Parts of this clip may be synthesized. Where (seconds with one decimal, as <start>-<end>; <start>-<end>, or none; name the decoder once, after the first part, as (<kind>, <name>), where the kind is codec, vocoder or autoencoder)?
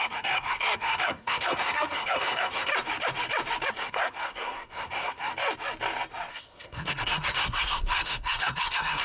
0.0-2.7 (codec, SNAC); 3.7-5.3; 6.3-9.0